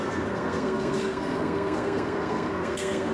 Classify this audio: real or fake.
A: fake